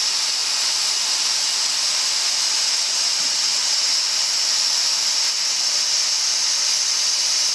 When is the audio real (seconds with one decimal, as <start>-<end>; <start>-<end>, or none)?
0.0-7.5